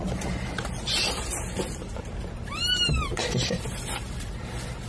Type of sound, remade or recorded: recorded